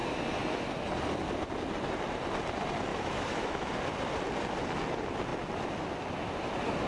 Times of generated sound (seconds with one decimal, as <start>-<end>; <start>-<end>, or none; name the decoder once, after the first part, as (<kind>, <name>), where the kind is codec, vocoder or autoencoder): 2.9-3.7 (autoencoder, DAC-VAE)